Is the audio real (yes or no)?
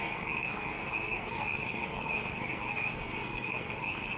no